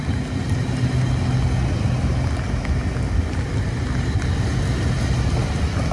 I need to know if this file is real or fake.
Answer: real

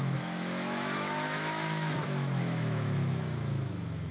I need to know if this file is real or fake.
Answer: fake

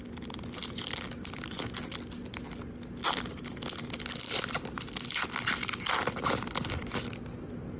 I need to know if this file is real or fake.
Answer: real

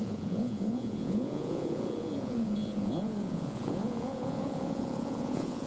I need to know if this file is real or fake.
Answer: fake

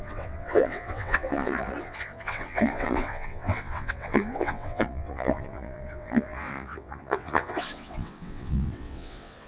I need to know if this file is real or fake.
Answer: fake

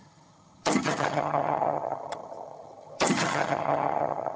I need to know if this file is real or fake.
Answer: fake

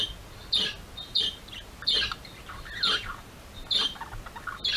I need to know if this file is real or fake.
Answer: real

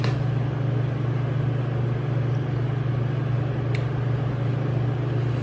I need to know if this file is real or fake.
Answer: real